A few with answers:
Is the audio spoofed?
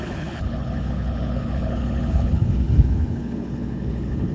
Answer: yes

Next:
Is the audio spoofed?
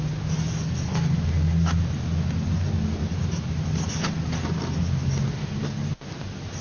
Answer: no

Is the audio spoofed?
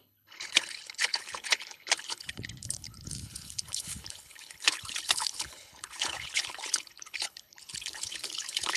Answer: yes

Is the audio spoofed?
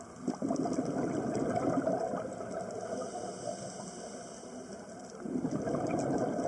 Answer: no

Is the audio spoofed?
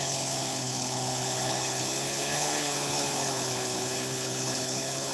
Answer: yes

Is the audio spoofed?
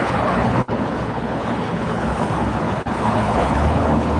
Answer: yes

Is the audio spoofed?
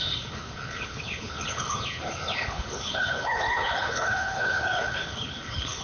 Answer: yes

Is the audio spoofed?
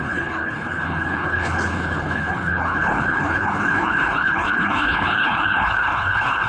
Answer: yes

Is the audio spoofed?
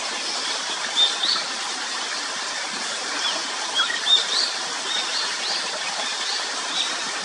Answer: no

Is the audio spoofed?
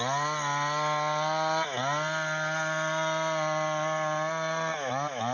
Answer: no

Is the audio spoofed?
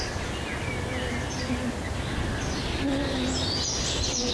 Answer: no